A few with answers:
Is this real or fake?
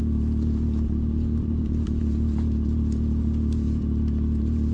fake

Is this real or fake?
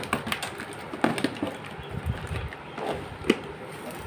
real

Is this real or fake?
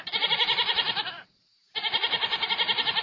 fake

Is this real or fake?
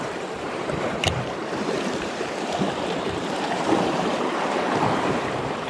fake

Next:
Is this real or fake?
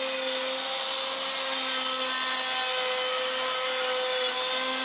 real